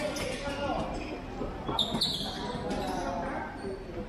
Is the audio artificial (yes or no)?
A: no